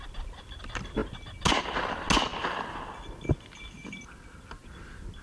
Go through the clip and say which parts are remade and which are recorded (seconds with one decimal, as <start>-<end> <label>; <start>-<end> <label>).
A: 0.0-5.2 recorded